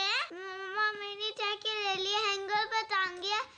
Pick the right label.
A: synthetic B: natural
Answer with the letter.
B